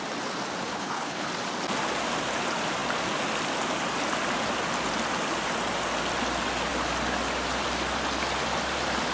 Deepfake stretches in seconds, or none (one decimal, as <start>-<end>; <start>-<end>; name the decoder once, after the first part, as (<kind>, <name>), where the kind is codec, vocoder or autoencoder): 0.7-1.3 (codec, HILCodec)